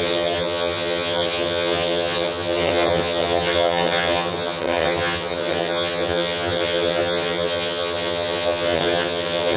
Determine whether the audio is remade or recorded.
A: remade